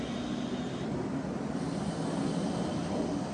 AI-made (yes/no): no